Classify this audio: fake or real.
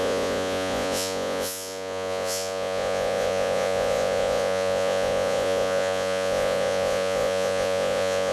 fake